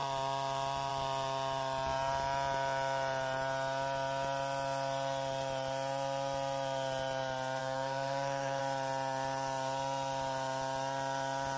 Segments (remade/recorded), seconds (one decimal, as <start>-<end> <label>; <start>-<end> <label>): 0.0-7.6 recorded; 7.6-8.6 remade; 8.6-11.6 recorded